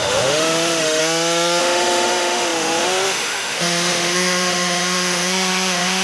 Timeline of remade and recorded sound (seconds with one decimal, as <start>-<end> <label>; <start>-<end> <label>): 0.0-1.0 remade; 1.0-1.6 recorded; 1.6-6.0 remade